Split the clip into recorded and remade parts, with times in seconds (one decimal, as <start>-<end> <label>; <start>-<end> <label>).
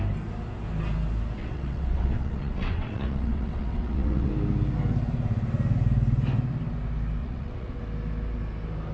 0.0-1.4 recorded; 1.4-4.3 remade; 4.3-7.2 recorded; 7.2-7.8 remade; 7.8-8.9 recorded